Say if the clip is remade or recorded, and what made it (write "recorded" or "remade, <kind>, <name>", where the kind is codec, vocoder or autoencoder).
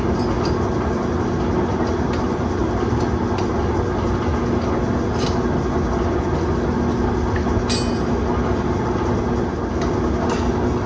recorded